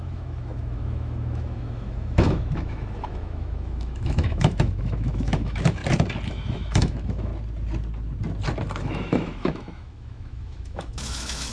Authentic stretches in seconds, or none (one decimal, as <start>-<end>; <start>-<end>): 5.8-6.3; 7.3-8.8